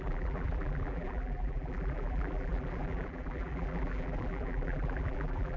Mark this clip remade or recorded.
remade